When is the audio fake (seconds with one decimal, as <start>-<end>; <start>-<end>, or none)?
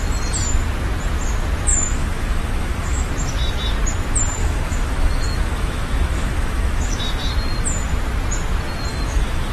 1.7-3.1; 4.4-7.0; 8.9-9.5